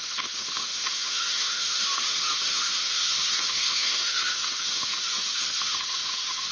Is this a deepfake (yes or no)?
yes